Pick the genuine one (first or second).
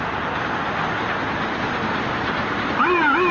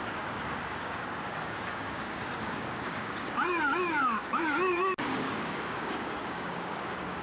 first